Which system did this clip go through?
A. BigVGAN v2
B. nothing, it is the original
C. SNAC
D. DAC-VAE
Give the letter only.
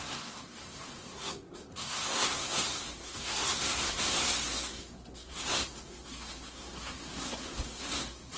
C